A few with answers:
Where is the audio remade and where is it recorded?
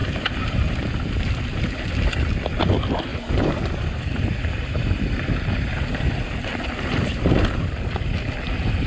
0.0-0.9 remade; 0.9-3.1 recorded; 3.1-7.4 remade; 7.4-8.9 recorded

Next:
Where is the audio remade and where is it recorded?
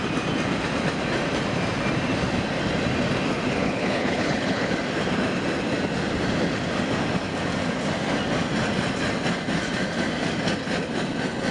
0.0-3.6 recorded; 3.6-4.7 remade; 4.7-11.5 recorded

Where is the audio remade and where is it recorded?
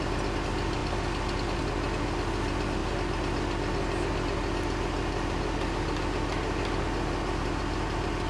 0.0-8.3 recorded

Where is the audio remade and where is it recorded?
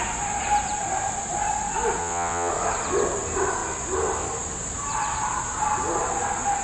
0.0-2.0 recorded; 2.0-2.5 remade; 2.5-6.6 recorded